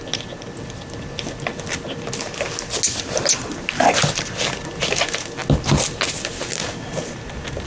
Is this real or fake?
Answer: real